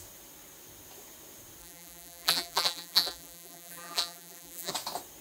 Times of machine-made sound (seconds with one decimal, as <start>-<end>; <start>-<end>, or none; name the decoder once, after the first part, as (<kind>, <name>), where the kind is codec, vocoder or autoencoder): 1.6-4.7 (vocoder, BigVGAN v2)

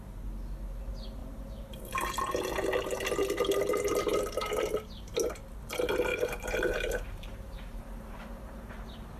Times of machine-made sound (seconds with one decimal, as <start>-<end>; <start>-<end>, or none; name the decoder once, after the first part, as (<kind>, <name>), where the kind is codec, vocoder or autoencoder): 1.2-2.2 (vocoder, BigVGAN v2); 4.1-4.6; 6.1-8.7

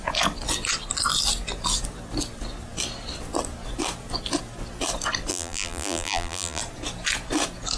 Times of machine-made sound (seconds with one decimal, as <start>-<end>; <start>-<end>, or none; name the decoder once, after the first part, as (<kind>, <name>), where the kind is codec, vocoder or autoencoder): 5.3-6.6 (vocoder, BigVGAN v2)

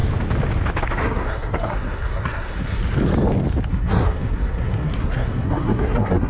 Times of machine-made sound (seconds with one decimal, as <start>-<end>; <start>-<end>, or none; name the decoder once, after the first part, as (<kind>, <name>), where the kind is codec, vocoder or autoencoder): 1.0-2.8 (codec, SNAC); 3.7-6.3

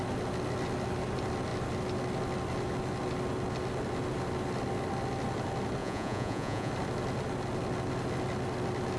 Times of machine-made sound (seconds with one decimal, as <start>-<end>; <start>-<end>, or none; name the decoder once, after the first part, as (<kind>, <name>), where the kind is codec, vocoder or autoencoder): 5.8-6.7 (vocoder, Vocos)

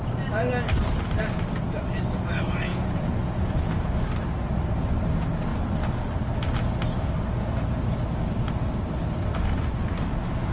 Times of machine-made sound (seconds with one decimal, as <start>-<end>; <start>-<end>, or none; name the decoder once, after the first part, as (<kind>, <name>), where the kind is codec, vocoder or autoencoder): 2.7-3.9 (vocoder, Vocos)